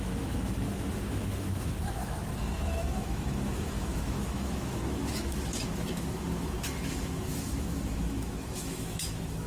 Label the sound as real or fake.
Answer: fake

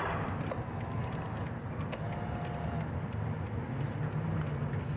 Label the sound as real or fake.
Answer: real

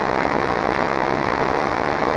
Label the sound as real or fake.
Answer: fake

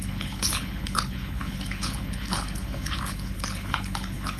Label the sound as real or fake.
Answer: fake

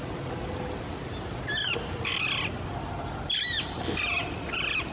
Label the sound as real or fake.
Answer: real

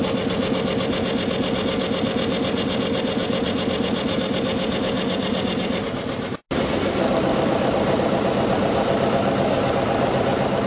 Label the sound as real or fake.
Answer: real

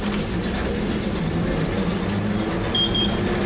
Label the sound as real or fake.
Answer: real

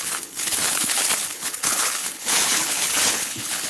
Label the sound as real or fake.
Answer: fake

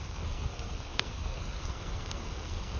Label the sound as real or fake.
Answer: fake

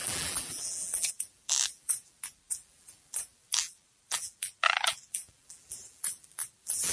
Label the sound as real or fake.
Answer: fake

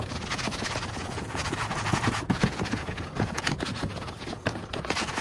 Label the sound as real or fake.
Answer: fake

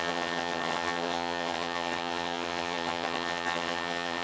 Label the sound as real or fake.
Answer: fake